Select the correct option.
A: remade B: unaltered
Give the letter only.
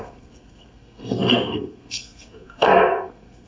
A